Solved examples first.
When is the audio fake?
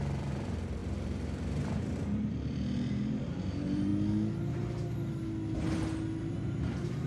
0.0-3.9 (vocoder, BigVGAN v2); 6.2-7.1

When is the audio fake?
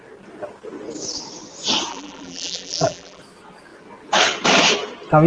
1.9-3.2 (vocoder, BigVGAN v2)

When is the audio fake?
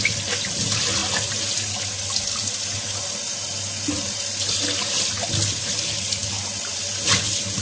none